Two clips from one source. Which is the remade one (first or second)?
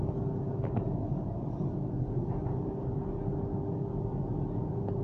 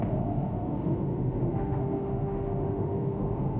second